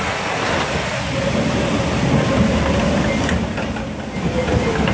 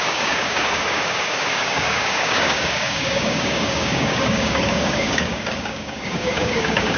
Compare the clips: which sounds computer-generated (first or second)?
second